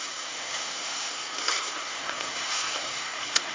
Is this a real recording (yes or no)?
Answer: no